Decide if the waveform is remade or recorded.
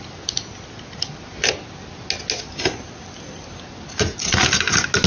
recorded